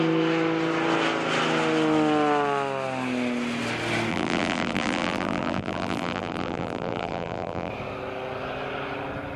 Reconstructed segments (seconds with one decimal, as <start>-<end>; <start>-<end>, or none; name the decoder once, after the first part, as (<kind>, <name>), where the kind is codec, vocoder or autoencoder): 4.1-7.7 (vocoder, BigVGAN v2)